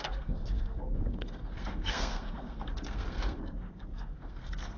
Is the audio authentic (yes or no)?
no